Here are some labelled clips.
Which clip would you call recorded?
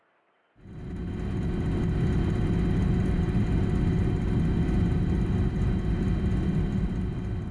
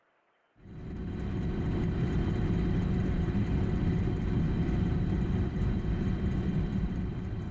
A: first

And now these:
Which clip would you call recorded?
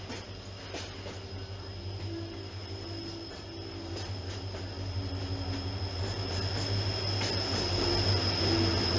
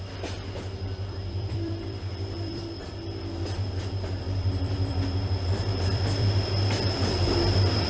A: first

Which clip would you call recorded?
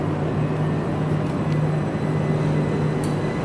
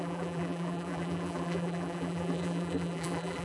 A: first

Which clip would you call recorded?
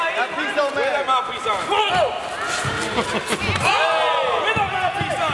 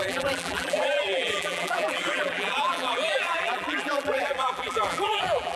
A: first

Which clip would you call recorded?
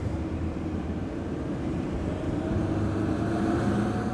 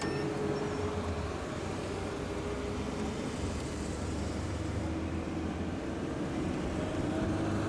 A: second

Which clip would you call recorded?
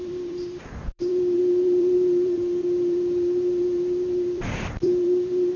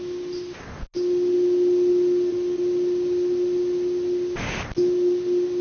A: second